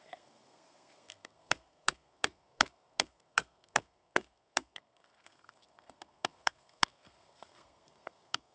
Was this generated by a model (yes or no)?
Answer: yes